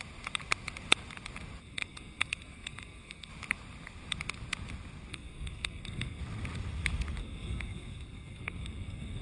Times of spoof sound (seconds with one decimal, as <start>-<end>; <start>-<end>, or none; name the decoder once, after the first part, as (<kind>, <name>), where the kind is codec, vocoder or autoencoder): 1.6-3.3 (codec, SNAC); 5.1-6.2; 7.2-9.2